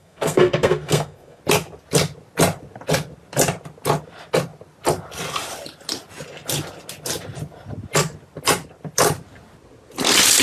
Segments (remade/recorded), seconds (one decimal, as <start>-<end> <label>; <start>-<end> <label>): 0.0-1.4 remade; 1.4-10.4 recorded